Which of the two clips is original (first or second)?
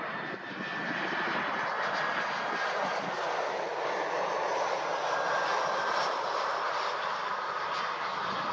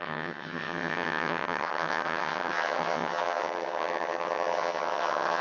first